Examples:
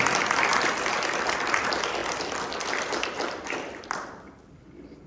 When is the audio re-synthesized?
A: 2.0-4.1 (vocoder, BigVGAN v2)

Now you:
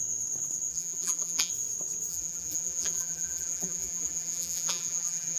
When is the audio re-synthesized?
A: 0.7-1.5 (vocoder, BigVGAN v2); 2.1-5.4

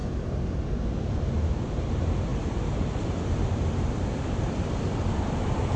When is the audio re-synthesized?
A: 1.5-5.8 (vocoder, BigVGAN v2)

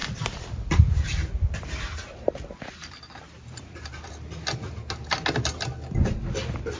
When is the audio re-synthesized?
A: 0.0-4.1 (vocoder, BigVGAN v2)

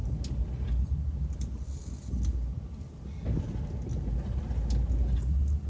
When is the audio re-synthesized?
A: none

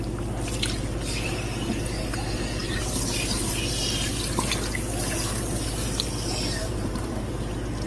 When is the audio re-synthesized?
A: 6.6-7.3 (vocoder, BigVGAN v2)

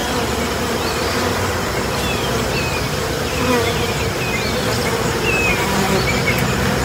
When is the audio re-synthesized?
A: 0.6-6.8 (vocoder, BigVGAN v2)

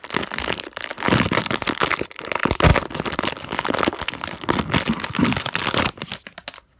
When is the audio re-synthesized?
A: 0.9-2.3 (vocoder, BigVGAN v2)